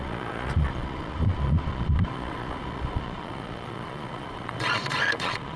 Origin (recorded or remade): remade